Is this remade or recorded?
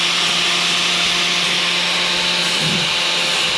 recorded